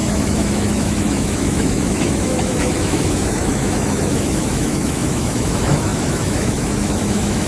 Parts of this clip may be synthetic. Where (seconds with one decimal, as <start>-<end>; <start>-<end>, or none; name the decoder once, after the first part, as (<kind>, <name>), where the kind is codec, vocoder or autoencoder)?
0.0-7.5 (autoencoder, DAC-VAE)